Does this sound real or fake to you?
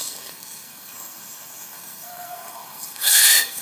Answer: fake